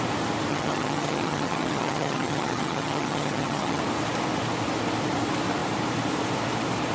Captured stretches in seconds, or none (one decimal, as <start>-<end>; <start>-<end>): 0.0-0.5; 3.8-6.9